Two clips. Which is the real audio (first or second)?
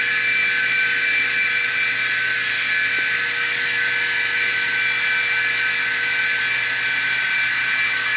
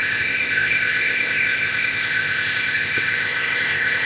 first